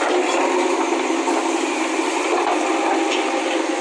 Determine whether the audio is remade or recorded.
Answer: recorded